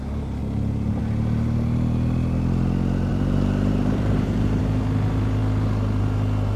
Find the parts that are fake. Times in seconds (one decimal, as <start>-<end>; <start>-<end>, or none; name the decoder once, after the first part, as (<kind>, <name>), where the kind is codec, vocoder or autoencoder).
0.4-1.0 (vocoder, BigVGAN v2); 3.1-4.6